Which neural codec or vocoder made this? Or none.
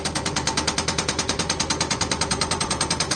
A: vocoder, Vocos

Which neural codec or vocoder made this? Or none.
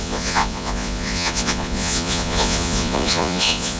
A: vocoder, Vocos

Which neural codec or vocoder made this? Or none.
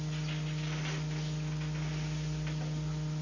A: none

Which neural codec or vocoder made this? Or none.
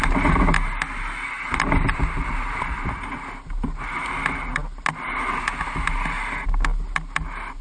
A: none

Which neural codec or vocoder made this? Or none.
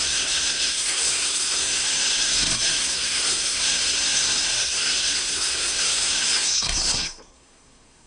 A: codec, SNAC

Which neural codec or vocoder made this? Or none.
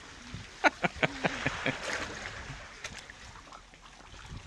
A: vocoder, BigVGAN v2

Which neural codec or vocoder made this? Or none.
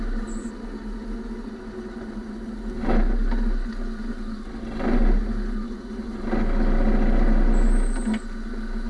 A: none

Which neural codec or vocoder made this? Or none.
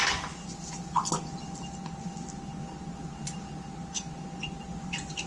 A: none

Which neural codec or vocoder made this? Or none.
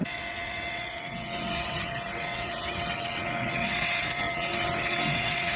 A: vocoder, WaveNeXt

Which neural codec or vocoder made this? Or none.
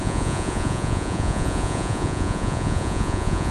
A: vocoder, Vocos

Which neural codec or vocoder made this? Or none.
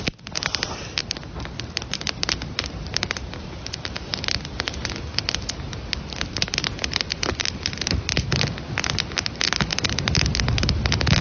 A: none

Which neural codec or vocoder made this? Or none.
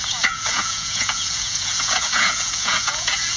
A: vocoder, Vocos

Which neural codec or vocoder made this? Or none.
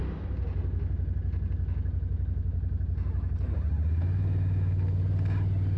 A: none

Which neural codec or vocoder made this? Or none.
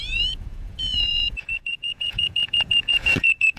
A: vocoder, Vocos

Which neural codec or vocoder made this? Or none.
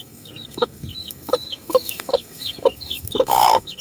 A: codec, SNAC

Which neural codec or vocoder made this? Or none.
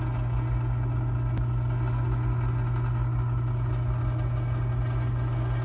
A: none